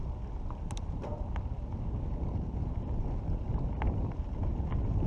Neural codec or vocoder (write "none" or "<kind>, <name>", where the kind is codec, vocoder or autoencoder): none